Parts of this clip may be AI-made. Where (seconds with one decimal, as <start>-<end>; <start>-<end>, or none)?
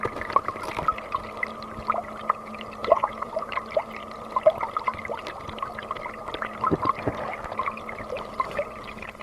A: 2.8-3.3